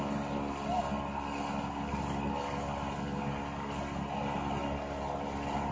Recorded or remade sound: recorded